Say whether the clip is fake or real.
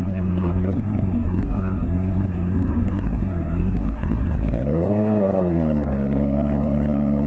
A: fake